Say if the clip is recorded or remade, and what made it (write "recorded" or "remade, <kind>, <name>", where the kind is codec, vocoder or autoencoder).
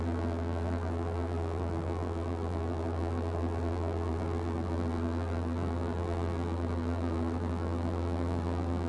remade, vocoder, BigVGAN v2